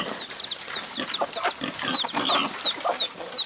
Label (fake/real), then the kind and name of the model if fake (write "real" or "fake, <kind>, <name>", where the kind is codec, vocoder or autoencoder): real